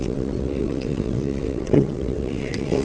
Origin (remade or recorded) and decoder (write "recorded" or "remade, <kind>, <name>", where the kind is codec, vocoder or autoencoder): remade, vocoder, WaveNeXt